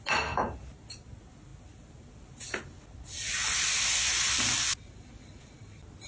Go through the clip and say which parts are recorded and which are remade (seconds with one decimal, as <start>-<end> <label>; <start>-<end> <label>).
0.0-6.1 recorded